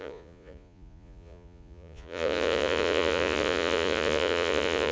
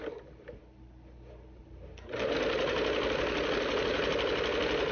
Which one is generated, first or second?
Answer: first